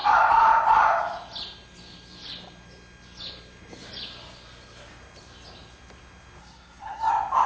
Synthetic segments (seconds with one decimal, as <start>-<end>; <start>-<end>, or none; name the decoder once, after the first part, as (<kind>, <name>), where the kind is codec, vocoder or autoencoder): 6.4-7.1 (codec, SNAC)